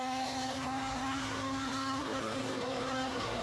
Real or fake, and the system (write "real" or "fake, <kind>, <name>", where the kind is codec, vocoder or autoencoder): fake, codec, SNAC